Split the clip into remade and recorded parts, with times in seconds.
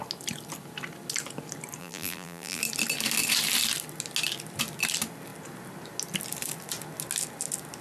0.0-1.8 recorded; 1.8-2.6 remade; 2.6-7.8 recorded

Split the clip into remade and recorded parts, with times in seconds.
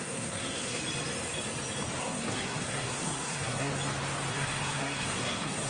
0.0-0.8 remade; 0.8-2.0 recorded; 2.0-3.7 remade; 3.7-4.3 recorded; 4.3-5.7 remade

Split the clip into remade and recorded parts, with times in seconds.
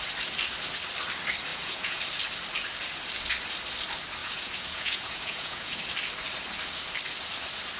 0.0-1.5 recorded; 1.5-2.0 remade; 2.0-4.2 recorded; 4.2-5.8 remade; 5.8-7.8 recorded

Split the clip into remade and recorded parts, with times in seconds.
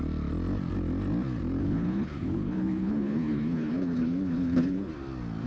0.0-1.6 recorded; 1.6-4.9 remade; 4.9-5.5 recorded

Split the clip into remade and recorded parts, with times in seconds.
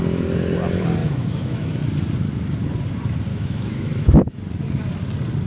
0.0-1.0 recorded; 1.0-1.8 remade; 1.8-3.3 recorded; 3.3-4.3 remade; 4.3-5.5 recorded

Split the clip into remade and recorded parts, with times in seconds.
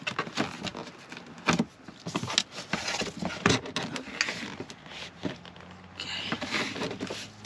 0.0-7.5 recorded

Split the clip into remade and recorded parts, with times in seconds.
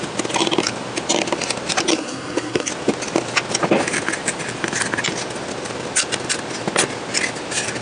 0.0-1.9 recorded; 1.9-2.7 remade; 2.7-7.8 recorded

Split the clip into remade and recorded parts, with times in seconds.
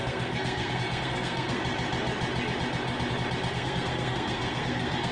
0.0-1.6 remade; 1.6-3.5 recorded; 3.5-5.1 remade